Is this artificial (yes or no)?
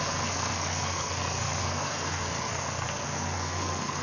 yes